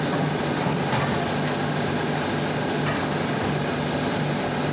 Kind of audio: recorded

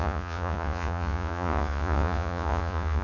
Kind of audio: remade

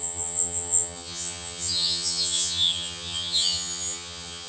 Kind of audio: remade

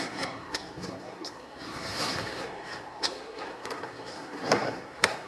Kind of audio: remade